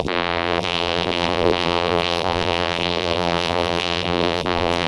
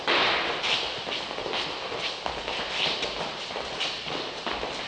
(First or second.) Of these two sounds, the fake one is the first